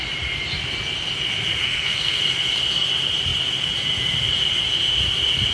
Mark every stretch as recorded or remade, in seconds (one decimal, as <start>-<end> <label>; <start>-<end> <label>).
0.0-1.6 recorded; 1.6-2.2 remade; 2.2-5.5 recorded